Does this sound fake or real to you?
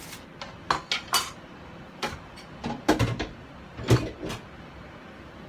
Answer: real